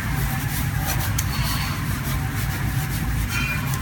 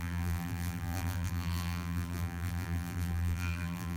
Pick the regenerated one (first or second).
second